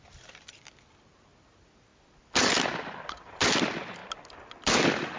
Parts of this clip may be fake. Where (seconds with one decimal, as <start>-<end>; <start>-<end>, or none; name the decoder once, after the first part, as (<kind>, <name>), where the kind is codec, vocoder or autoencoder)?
none